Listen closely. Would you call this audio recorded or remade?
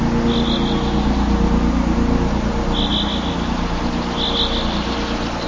recorded